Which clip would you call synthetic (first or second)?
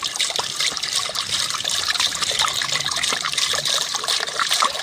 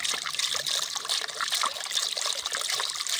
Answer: first